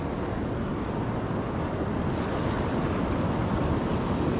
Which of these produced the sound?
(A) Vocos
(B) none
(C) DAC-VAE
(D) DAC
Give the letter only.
B